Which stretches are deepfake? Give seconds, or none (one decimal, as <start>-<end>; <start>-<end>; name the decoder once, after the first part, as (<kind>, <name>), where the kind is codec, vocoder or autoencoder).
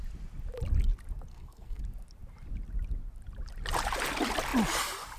1.3-1.8 (codec, SNAC)